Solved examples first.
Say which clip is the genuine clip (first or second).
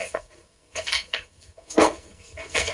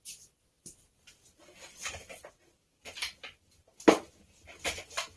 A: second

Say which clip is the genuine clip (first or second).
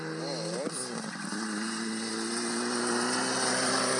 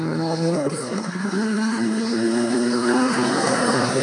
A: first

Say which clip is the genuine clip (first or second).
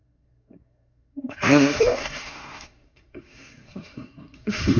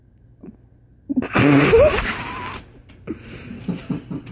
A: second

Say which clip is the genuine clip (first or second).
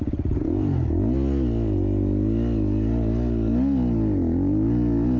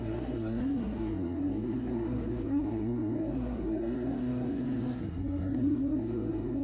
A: first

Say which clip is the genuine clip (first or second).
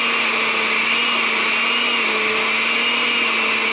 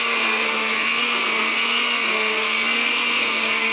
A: first